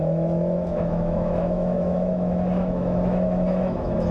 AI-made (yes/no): yes